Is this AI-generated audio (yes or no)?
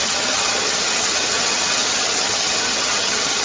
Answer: yes